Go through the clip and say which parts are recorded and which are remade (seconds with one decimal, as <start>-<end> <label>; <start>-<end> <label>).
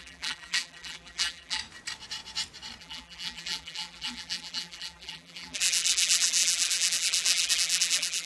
0.0-1.6 remade; 1.6-2.8 recorded; 2.8-8.3 remade